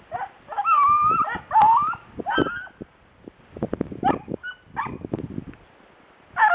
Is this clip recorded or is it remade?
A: recorded